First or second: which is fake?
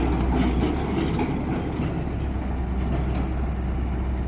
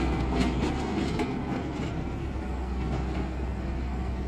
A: second